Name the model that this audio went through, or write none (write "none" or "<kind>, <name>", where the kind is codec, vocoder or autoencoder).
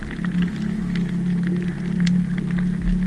none